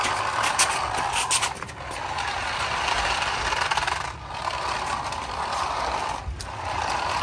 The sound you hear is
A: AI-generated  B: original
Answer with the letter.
B